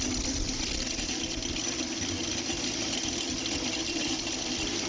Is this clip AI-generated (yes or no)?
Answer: no